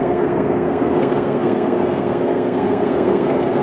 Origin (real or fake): fake